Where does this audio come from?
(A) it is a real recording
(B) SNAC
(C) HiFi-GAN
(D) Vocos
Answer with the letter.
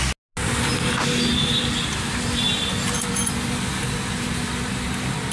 A